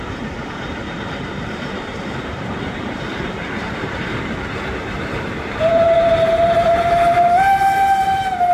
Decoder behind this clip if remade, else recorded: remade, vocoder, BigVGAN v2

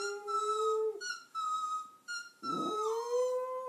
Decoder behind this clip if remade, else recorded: recorded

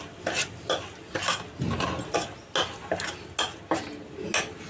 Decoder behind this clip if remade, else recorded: recorded